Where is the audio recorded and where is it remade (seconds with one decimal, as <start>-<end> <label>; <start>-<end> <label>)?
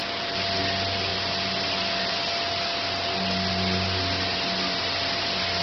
0.0-5.6 recorded